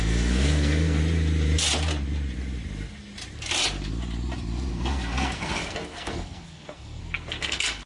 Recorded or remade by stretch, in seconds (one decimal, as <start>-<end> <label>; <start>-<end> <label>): 0.0-1.0 remade; 1.0-4.7 recorded; 4.7-7.9 remade